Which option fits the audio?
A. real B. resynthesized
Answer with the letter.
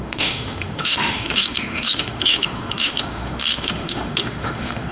B